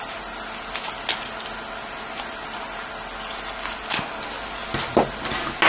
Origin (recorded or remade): recorded